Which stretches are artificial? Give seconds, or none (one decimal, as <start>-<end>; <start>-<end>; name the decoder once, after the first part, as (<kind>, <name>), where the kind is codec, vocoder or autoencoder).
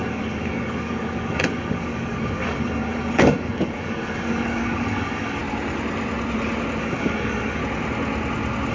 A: 0.0-5.4 (codec, DAC); 6.8-7.6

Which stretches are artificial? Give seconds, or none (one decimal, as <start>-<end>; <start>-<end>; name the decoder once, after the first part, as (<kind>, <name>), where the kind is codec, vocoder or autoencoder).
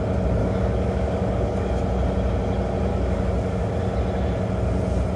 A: 0.4-1.7 (codec, DAC); 2.9-3.7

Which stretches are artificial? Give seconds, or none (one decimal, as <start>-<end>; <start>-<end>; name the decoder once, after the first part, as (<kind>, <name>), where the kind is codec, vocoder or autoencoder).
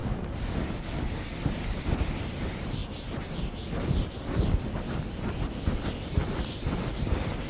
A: 0.0-1.1 (codec, DAC)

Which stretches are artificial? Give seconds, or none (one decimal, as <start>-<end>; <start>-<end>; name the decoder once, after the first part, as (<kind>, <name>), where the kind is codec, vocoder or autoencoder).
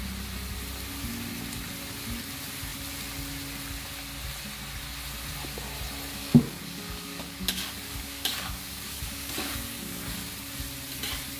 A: 6.2-10.3 (codec, DAC)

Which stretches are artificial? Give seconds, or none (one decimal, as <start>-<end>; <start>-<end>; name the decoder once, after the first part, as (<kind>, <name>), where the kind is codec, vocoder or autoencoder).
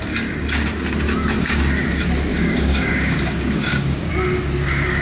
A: 2.3-4.1 (codec, DAC)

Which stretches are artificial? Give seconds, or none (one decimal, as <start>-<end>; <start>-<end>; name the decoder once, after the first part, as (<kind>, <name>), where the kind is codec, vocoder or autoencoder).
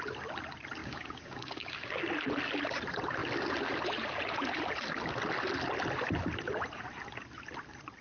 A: 0.8-2.1 (codec, DAC)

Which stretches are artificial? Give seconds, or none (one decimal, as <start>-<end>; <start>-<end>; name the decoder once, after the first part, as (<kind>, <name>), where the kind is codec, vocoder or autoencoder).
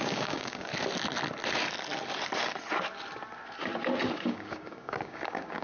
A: 0.0-0.7 (codec, DAC); 4.1-5.6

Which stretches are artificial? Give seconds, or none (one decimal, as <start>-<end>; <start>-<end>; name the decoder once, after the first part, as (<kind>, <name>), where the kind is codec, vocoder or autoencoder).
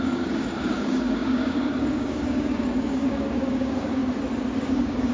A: 0.0-4.0 (codec, DAC); 4.6-5.1